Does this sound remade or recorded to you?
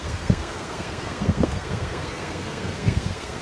remade